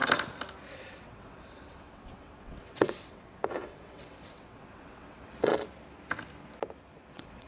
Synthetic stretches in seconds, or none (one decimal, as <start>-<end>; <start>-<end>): 0.7-5.5; 7.1-7.5